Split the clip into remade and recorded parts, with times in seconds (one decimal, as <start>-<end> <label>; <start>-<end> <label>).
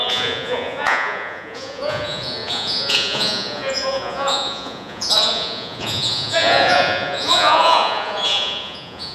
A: 0.0-9.1 remade